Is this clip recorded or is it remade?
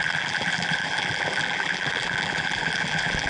remade